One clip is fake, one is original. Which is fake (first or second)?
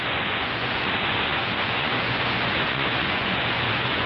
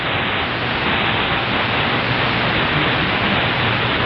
first